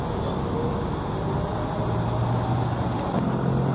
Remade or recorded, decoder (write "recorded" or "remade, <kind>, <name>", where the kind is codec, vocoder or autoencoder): recorded